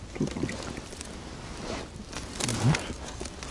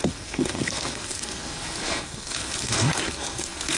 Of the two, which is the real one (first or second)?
first